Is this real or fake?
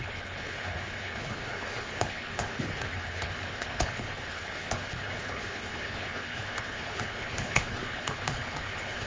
fake